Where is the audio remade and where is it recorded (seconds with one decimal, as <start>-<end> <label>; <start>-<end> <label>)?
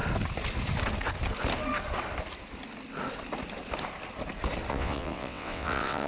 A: 0.0-4.7 recorded; 4.7-6.1 remade